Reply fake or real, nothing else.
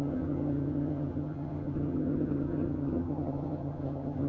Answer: fake